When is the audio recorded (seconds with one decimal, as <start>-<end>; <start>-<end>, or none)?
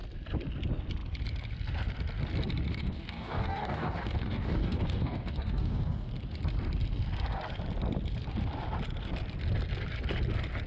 0.0-2.7; 6.1-10.7